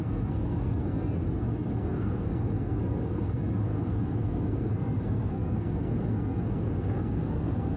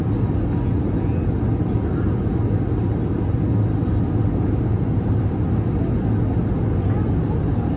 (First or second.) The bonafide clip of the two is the second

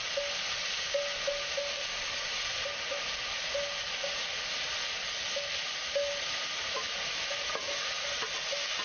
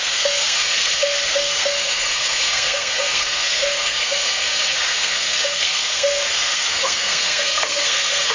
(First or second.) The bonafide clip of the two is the first